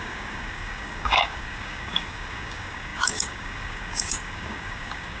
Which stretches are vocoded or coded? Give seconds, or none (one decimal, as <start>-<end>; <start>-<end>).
0.0-5.2